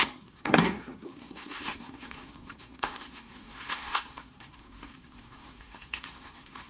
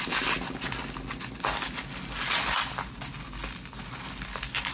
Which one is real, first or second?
second